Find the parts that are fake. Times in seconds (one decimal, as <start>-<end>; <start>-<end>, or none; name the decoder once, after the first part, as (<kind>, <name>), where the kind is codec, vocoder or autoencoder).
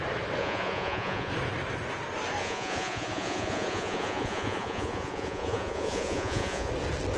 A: 0.4-1.3 (vocoder, Vocos); 2.4-6.7